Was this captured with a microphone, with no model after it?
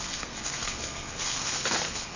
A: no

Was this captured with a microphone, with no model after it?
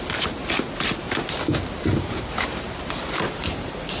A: yes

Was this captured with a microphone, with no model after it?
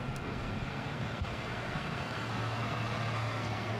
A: no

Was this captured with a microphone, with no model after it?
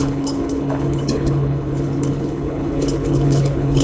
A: no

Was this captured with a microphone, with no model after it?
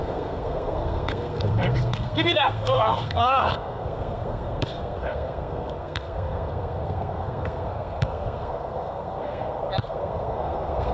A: no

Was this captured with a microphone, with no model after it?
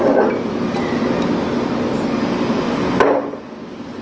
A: yes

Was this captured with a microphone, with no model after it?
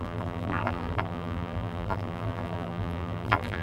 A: no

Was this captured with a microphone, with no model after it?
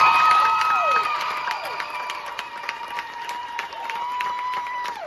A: no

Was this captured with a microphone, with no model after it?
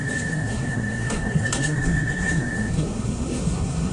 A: no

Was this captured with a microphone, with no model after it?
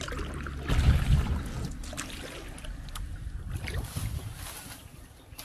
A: yes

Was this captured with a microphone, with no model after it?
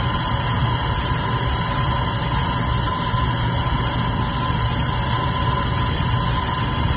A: yes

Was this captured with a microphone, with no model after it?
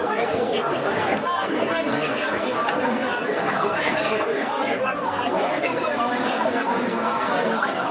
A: no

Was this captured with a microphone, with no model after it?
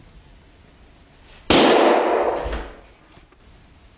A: yes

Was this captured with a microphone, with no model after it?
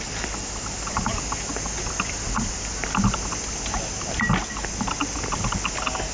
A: yes